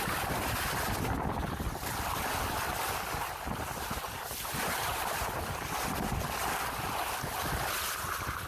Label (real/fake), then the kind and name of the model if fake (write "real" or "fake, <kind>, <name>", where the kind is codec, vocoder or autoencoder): real